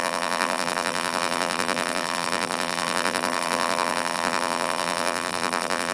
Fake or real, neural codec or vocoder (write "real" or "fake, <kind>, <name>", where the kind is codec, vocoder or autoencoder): fake, vocoder, BigVGAN v2